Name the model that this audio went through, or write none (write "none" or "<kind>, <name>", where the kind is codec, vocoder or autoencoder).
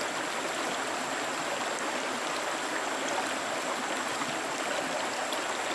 none